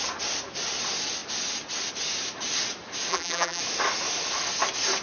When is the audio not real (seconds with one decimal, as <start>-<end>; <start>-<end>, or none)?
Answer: 3.1-3.6